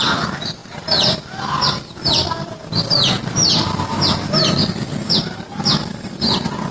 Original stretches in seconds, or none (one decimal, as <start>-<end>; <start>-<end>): 2.6-3.1